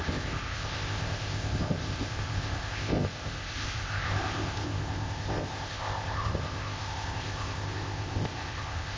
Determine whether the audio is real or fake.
fake